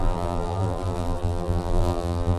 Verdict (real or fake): fake